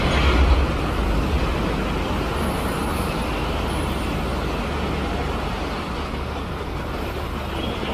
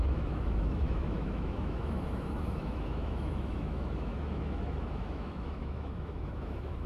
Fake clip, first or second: second